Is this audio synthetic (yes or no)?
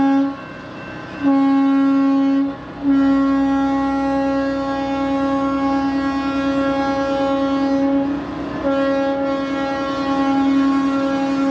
no